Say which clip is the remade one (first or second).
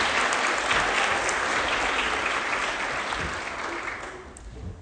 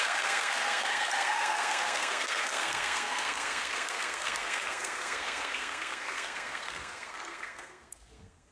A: second